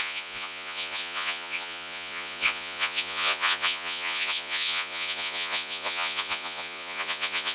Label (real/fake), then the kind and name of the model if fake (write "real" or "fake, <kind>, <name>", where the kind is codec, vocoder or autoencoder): fake, vocoder, Vocos